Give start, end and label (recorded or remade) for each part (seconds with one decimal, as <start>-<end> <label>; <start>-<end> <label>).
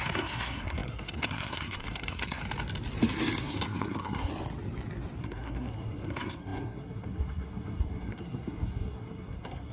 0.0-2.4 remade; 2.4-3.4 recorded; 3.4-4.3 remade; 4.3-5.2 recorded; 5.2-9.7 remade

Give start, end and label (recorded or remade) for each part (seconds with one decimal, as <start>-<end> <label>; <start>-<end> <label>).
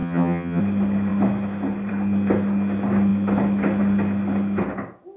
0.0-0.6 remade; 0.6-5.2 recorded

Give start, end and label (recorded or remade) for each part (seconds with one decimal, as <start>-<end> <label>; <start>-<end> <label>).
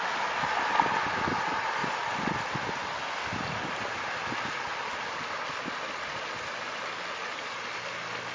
0.0-8.3 recorded